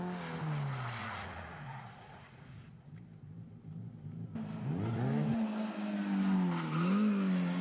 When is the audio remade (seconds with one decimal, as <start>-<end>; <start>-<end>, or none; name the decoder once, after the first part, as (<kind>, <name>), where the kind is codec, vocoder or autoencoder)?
1.0-2.9 (vocoder, Vocos)